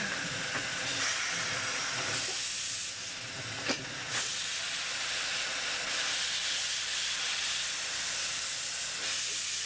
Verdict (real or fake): fake